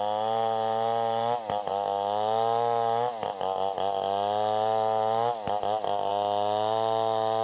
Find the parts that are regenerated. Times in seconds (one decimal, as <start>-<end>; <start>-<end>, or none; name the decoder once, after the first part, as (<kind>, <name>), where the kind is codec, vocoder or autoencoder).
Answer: none